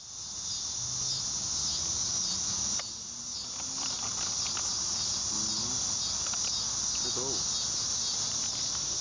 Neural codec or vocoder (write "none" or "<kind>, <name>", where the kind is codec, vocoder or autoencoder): none